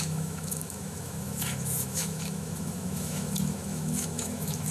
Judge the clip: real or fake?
fake